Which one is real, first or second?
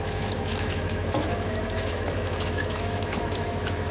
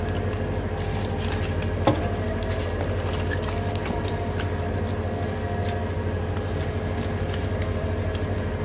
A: second